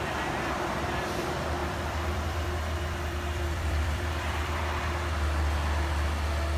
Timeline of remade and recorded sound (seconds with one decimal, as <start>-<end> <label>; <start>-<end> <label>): 0.0-1.6 recorded; 1.6-4.8 remade; 4.8-6.6 recorded